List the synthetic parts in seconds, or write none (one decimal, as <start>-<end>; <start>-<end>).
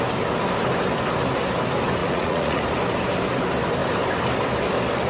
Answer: 2.0-2.6